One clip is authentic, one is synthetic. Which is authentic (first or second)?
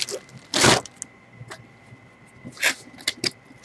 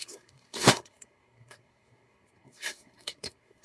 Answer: first